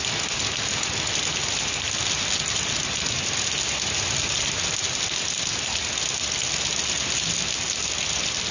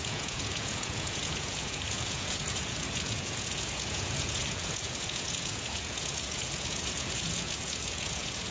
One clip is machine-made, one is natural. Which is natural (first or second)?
first